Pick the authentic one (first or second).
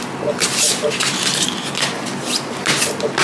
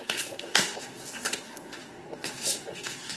first